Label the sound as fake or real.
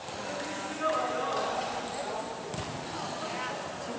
real